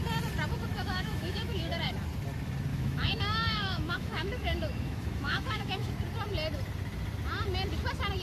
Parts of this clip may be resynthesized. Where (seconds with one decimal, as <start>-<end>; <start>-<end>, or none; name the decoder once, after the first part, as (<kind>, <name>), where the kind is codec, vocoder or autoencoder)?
0.7-1.9 (autoencoder, DAC-VAE); 2.7-5.9